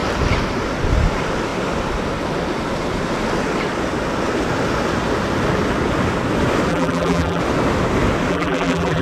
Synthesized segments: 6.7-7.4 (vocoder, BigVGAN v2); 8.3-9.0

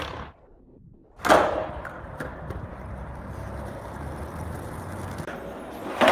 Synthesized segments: none